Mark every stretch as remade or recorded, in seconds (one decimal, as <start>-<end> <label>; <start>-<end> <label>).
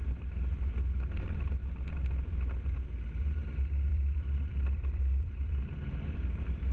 0.0-3.9 recorded; 3.9-5.6 remade; 5.6-6.7 recorded